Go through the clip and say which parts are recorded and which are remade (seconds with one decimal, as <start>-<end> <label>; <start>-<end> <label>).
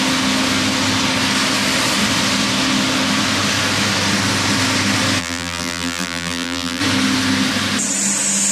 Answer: 0.0-5.2 recorded; 5.2-6.8 remade; 6.8-8.5 recorded